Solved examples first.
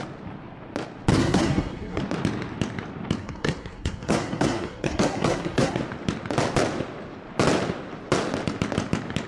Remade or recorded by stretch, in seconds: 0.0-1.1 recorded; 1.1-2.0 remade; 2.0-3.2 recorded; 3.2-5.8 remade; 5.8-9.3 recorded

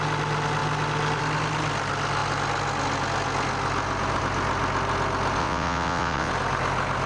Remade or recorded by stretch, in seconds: 0.0-5.4 recorded; 5.4-6.3 remade; 6.3-7.1 recorded

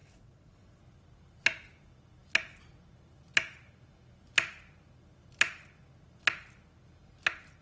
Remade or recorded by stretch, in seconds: 0.0-0.8 remade; 0.8-7.6 recorded

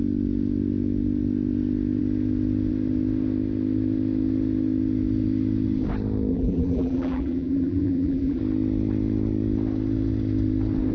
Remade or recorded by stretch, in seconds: 0.0-6.3 recorded; 6.3-8.4 remade; 8.4-10.9 recorded